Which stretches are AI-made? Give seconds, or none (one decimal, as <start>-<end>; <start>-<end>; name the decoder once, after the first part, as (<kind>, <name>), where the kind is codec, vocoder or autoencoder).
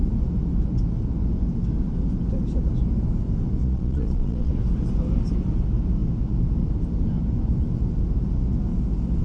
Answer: 3.6-4.5 (vocoder, Vocos)